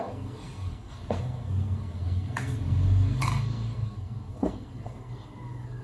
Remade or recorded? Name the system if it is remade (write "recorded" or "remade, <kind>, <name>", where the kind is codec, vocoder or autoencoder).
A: remade, codec, SNAC